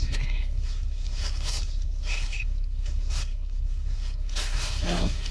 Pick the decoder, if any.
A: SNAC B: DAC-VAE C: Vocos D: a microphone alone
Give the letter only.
A